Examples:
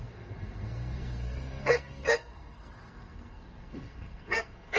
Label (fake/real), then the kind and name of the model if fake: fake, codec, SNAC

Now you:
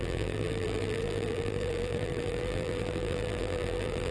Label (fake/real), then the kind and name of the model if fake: fake, vocoder, BigVGAN v2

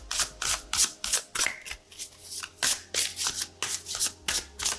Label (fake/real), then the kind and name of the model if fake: real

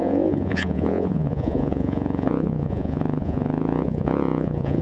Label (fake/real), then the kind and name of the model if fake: fake, vocoder, Vocos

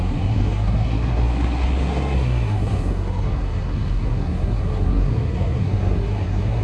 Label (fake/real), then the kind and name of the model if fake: fake, codec, SNAC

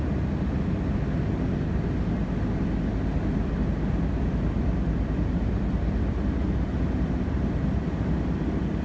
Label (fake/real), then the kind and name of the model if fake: real